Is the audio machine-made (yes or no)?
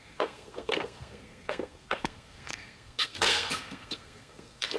yes